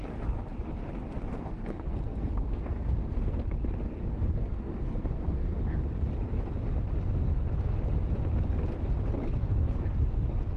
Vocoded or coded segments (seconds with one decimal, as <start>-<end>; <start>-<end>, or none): 1.3-3.4; 4.4-5.6